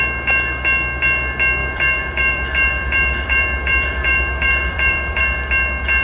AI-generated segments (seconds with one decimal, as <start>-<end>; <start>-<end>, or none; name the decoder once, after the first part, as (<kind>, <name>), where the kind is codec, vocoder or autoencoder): 1.6-5.2 (vocoder, BigVGAN v2)